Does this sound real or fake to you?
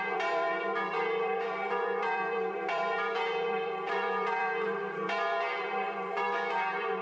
fake